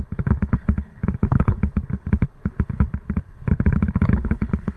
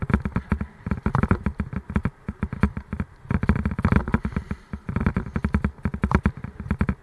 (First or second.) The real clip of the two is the second